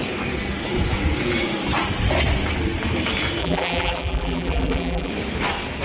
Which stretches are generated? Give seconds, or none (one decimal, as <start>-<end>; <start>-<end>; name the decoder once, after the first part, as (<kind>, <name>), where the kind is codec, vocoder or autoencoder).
3.4-5.1 (vocoder, BigVGAN v2)